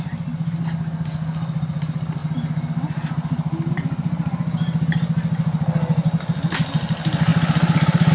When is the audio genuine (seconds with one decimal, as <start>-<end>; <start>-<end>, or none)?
0.0-8.1